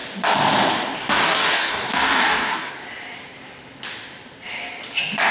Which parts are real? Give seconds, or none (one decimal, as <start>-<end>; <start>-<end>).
0.0-1.0; 2.7-5.3